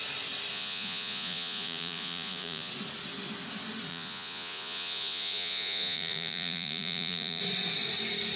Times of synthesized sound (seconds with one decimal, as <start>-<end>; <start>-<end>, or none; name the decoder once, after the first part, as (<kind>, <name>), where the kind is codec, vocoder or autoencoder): 0.5-2.7 (vocoder, Vocos); 3.9-7.4

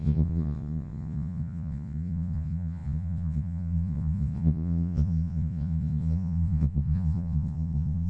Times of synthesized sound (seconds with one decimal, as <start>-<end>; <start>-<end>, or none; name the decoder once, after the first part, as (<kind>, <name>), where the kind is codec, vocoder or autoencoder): 0.0-8.1 (vocoder, Vocos)

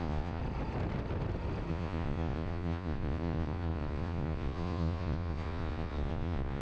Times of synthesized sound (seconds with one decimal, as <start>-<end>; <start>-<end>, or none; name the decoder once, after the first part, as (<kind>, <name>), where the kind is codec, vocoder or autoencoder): 0.0-0.4 (vocoder, Vocos); 1.7-6.6

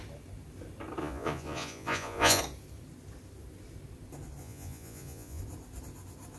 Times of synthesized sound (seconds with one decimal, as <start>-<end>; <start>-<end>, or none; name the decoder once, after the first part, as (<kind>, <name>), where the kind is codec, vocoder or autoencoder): 1.0-2.4 (vocoder, Vocos); 4.4-5.4

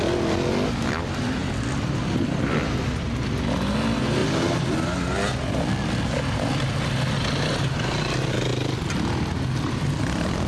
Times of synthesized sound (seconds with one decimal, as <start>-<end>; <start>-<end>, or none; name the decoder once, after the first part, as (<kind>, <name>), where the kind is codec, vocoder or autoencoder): none

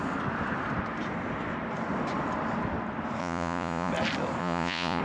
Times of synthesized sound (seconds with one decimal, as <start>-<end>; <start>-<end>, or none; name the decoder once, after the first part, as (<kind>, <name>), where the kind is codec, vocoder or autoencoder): 3.2-3.9 (vocoder, Vocos); 4.4-5.0